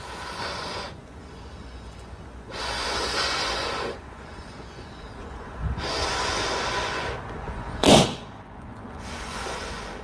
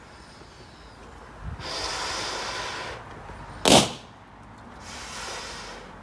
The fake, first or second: first